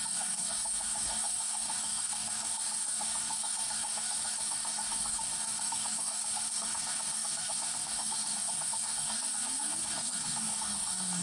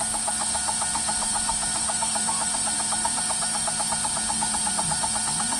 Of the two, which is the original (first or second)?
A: second